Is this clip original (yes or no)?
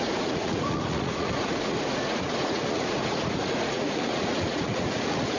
no